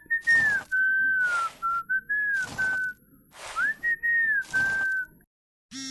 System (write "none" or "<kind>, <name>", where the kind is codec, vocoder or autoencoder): none